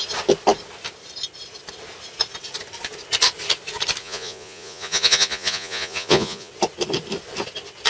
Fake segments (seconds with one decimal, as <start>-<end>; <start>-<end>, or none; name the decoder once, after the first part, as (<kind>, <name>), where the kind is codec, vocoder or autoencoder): 4.0-6.5 (vocoder, Vocos)